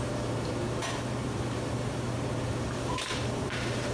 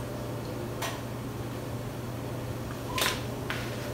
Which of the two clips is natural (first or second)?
second